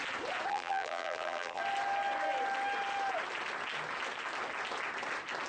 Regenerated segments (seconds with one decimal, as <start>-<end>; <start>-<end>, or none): 0.5-1.6